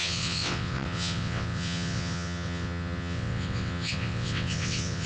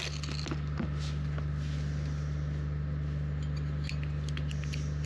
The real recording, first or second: second